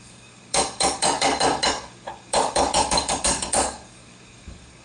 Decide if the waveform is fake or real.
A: fake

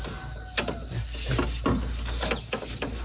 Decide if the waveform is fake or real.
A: real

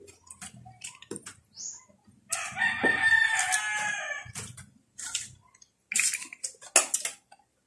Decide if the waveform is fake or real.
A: real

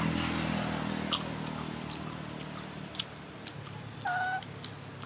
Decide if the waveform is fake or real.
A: real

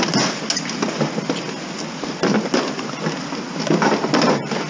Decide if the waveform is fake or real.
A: real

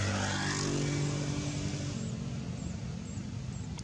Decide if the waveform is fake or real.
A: real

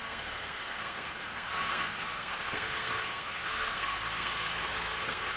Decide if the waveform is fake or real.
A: fake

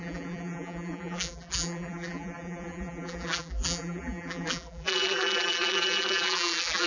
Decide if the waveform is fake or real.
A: fake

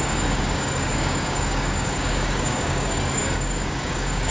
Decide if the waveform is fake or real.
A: fake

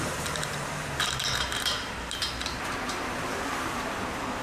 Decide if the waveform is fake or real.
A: fake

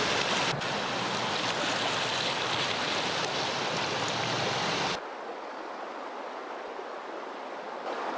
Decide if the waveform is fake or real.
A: real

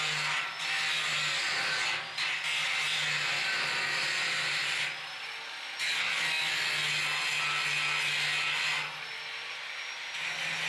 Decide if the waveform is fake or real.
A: real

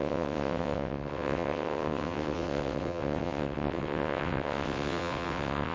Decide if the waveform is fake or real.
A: fake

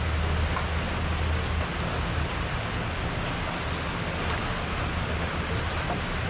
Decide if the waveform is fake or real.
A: real